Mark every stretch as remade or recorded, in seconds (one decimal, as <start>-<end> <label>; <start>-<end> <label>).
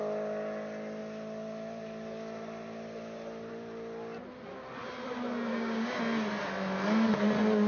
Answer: 0.0-5.5 recorded; 5.5-6.0 remade; 6.0-7.7 recorded